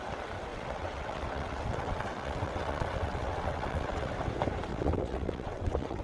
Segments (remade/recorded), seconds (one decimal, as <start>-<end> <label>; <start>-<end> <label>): 0.0-0.5 recorded; 0.5-4.1 remade; 4.1-4.7 recorded; 4.7-6.0 remade